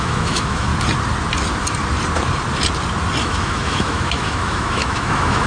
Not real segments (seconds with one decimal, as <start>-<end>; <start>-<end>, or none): 0.0-0.7; 3.2-5.5